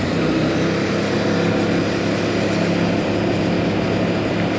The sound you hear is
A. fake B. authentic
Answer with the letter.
B